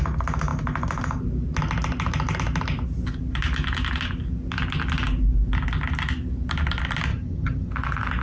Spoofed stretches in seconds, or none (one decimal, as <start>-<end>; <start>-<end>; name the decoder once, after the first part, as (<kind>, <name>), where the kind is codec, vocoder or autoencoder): 7.1-7.7 (vocoder, HiFi-GAN)